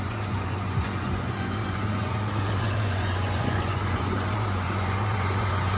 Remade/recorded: remade